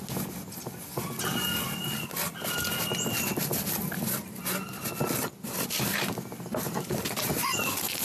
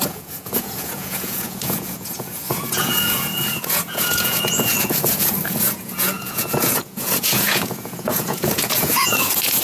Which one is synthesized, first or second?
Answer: second